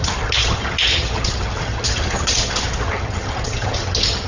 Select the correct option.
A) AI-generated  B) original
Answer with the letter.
A